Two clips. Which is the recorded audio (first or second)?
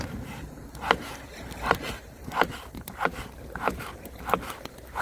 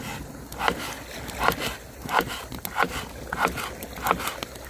second